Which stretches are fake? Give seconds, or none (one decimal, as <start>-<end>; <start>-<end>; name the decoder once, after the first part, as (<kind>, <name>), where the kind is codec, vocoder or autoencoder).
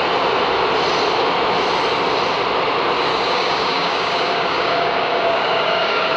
3.1-6.2 (codec, DAC)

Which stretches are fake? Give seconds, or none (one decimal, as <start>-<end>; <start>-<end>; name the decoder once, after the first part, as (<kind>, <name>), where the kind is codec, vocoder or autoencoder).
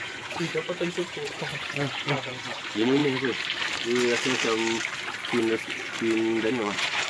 0.0-3.0 (vocoder, Vocos); 6.5-7.1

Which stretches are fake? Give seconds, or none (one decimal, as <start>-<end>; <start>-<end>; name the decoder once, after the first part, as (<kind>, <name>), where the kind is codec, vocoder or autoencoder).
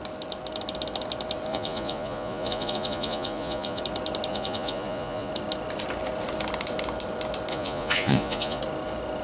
1.5-3.8 (vocoder, Vocos); 4.3-5.3; 7.5-8.6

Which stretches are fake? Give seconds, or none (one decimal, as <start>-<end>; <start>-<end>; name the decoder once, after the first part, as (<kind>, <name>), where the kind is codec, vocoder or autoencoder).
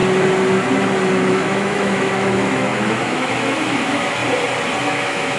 1.3-4.2 (autoencoder, DAC-VAE); 4.8-5.4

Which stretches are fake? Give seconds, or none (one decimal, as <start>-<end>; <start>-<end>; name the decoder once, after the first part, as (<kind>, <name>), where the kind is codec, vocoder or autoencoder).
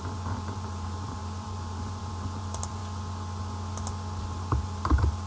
0.0-2.8 (vocoder, BigVGAN v2); 4.2-5.3